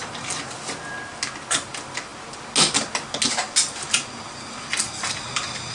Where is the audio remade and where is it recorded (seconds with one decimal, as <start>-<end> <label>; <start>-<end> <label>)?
0.0-5.7 recorded

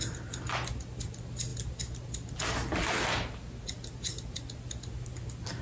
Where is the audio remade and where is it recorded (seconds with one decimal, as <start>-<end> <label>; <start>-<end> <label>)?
0.0-5.6 recorded

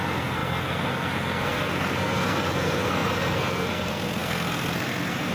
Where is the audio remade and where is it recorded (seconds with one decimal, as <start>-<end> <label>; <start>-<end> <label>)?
0.0-5.3 remade

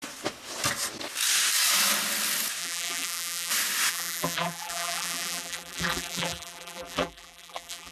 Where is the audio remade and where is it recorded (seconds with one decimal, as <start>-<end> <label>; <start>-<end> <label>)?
0.0-2.6 recorded; 2.6-3.5 remade; 3.5-3.9 recorded; 3.9-7.9 remade

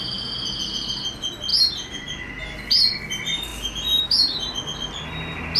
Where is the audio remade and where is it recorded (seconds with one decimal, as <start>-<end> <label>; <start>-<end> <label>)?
0.0-5.6 recorded

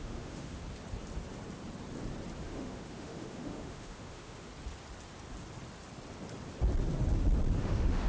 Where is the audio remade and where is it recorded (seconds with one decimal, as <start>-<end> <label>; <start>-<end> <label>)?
0.0-0.6 remade; 0.6-2.4 recorded; 2.4-4.5 remade; 4.5-7.6 recorded; 7.6-8.1 remade